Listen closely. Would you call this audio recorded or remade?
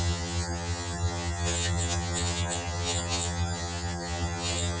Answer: remade